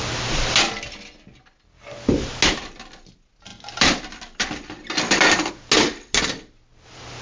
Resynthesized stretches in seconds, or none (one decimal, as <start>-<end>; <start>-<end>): none